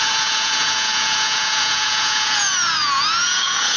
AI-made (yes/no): yes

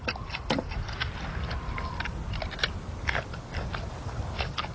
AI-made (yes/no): yes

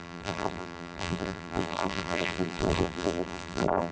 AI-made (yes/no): yes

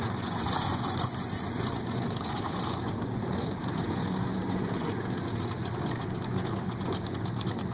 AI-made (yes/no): yes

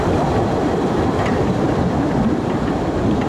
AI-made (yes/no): no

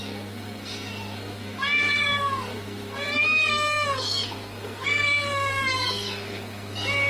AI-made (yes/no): yes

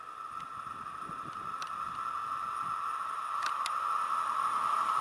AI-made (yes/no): no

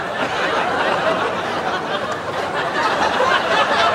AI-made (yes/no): no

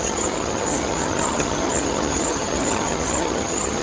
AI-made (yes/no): yes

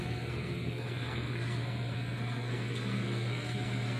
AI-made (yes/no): yes